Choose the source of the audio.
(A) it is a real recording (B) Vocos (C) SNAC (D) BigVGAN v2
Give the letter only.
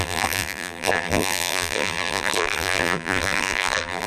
D